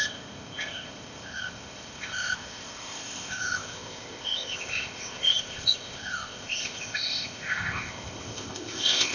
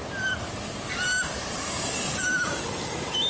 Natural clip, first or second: second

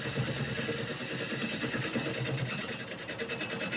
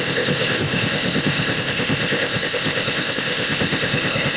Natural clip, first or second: first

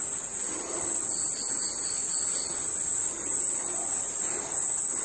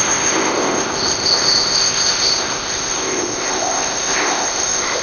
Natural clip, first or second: first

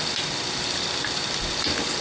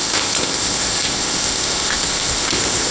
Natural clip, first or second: first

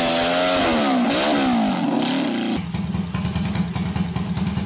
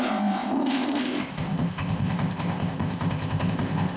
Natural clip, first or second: first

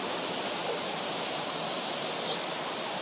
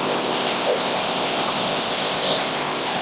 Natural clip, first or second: first